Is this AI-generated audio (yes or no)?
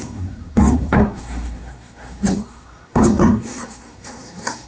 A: yes